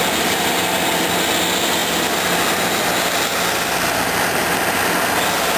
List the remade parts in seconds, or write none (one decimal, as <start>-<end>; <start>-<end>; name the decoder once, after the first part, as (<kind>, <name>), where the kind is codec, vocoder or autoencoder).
none